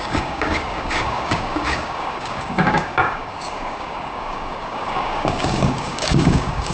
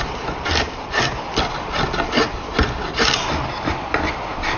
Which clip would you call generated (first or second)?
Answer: first